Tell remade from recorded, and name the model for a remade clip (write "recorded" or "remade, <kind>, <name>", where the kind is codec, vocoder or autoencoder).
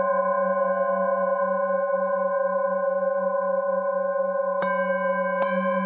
recorded